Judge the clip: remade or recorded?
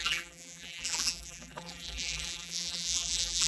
remade